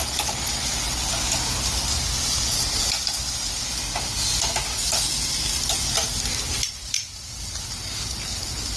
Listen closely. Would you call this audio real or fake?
real